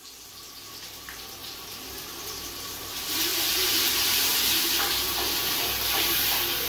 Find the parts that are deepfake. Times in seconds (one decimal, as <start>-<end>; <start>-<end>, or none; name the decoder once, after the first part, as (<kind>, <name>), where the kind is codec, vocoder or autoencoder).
1.4-2.1 (vocoder, BigVGAN v2); 3.3-4.4

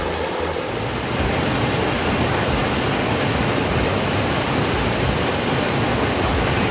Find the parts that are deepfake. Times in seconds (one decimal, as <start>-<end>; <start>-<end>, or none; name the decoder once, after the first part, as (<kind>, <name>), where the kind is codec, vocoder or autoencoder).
0.0-2.6 (vocoder, BigVGAN v2); 3.4-6.7

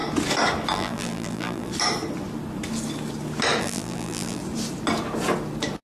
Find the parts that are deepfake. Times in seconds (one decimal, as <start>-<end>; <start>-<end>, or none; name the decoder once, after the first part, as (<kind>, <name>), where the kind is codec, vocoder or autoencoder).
0.7-1.7 (vocoder, BigVGAN v2); 3.6-4.4